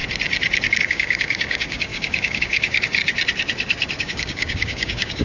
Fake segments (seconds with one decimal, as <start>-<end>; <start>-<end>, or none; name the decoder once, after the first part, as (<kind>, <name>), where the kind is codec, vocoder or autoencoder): 0.8-3.0 (codec, DAC); 4.0-5.2